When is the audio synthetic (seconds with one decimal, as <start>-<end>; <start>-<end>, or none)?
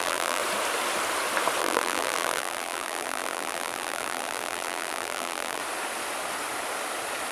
0.0-0.4; 1.6-5.6